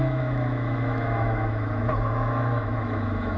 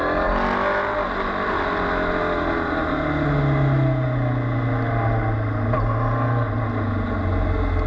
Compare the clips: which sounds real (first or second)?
second